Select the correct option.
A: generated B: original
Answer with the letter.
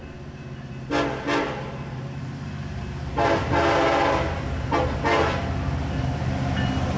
B